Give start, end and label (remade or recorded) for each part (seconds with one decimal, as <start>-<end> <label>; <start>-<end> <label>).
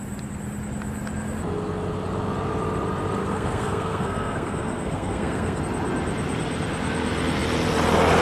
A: 0.0-3.2 recorded; 3.2-5.6 remade; 5.6-8.2 recorded